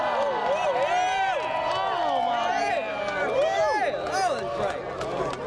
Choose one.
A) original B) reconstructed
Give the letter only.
A